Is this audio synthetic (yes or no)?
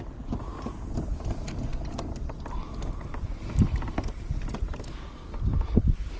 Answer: no